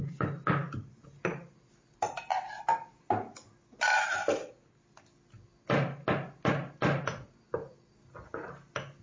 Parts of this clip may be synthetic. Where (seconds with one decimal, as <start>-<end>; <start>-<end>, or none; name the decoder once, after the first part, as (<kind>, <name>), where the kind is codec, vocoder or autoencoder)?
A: none